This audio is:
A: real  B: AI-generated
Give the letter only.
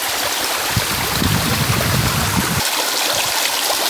A